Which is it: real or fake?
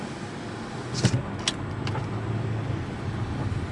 real